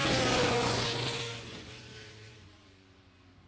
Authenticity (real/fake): fake